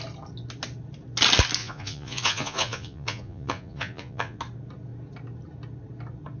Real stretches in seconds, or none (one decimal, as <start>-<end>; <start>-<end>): 0.0-1.6; 4.4-6.4